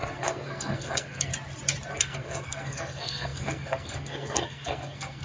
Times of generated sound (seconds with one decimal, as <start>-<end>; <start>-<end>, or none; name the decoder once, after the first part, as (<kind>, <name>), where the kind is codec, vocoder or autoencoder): 0.0-1.3 (codec, SNAC); 1.9-5.2

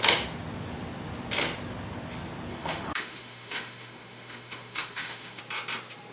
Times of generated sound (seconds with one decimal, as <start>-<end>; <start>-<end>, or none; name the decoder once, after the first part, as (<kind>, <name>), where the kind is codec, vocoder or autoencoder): 2.5-5.4 (autoencoder, DAC-VAE)

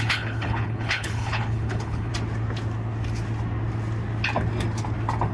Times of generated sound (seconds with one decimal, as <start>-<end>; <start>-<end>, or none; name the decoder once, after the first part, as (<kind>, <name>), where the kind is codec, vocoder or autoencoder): 0.0-2.1 (codec, HILCodec)

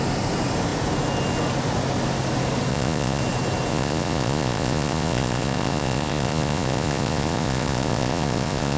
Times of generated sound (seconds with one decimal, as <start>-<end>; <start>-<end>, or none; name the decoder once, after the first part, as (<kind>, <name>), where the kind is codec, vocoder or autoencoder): 2.7-3.2 (vocoder, Vocos); 3.7-8.8